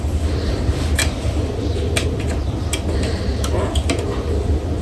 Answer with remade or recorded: recorded